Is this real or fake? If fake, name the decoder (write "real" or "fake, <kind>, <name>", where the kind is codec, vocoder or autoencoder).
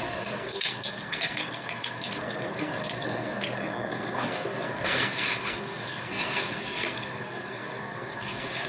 fake, codec, SNAC